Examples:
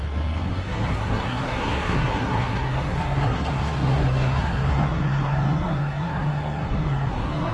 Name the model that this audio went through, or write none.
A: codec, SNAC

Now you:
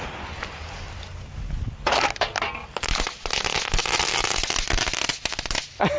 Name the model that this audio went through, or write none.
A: none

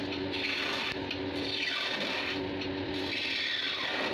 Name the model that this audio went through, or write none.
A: none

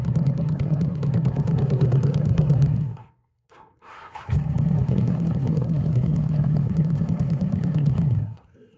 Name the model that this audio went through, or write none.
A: codec, SNAC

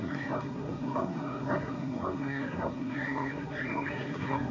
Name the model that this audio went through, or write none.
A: codec, SNAC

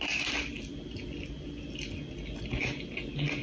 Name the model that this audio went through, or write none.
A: none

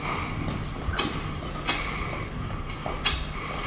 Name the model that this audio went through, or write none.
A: none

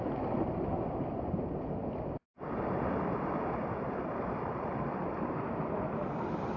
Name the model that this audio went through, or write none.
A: none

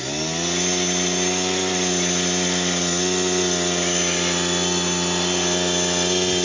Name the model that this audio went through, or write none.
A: none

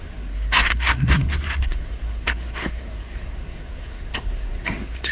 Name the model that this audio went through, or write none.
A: codec, SNAC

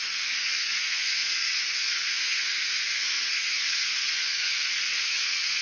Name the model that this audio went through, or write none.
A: codec, SNAC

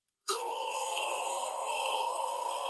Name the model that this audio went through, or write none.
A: codec, SNAC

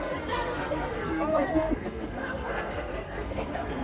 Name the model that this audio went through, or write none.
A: codec, SNAC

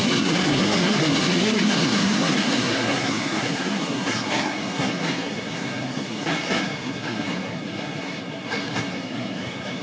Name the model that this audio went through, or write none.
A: codec, SNAC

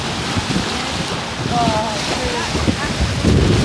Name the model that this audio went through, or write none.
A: none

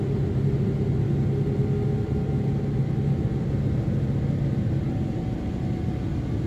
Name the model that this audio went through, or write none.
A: none